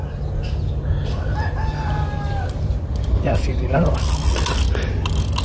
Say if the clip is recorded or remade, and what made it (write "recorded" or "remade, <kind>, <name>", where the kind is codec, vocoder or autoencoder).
recorded